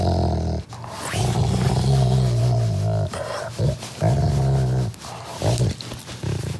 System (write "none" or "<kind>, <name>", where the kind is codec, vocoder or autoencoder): none